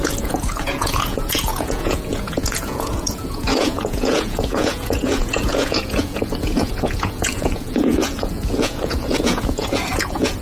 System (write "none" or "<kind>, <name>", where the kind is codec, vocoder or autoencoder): vocoder, Vocos